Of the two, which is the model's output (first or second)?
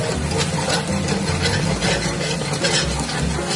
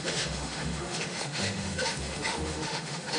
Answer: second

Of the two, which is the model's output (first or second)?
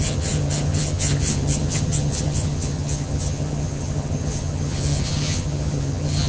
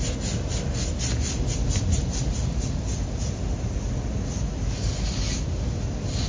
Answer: first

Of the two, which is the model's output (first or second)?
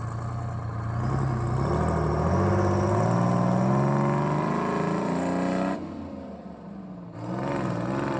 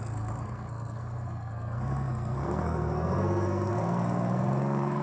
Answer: second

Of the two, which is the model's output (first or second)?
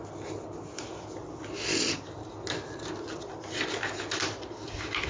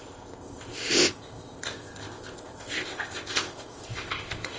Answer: second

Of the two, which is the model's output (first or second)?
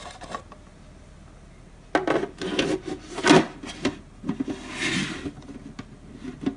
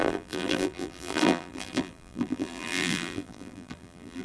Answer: second